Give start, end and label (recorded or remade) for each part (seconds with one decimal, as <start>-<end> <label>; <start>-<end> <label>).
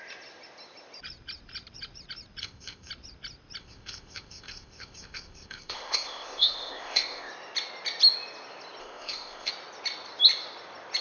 0.0-2.4 recorded; 2.4-2.9 remade; 2.9-3.6 recorded; 3.6-7.3 remade; 7.3-8.8 recorded; 8.8-9.5 remade; 9.5-11.0 recorded